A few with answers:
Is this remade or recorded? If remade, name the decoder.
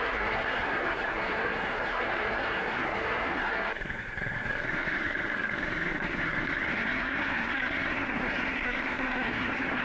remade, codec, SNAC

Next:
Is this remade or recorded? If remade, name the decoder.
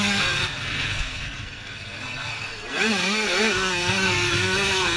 remade, codec, SNAC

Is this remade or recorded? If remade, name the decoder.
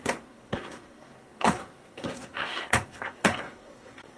remade, codec, SNAC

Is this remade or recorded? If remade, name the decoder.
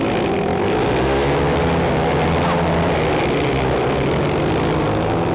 recorded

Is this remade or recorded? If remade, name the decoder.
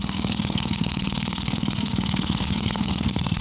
remade, codec, SNAC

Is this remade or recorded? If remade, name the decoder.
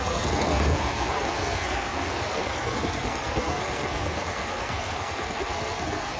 remade, codec, SNAC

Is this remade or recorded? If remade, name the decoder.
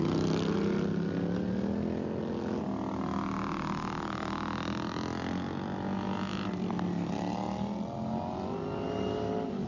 recorded